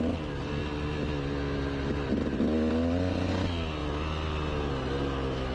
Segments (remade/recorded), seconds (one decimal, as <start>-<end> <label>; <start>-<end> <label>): 0.0-5.5 recorded